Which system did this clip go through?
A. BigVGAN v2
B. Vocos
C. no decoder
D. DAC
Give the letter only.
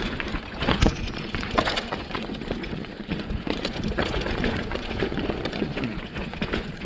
B